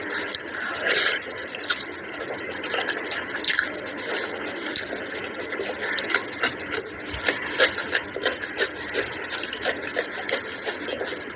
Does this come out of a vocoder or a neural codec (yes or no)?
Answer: yes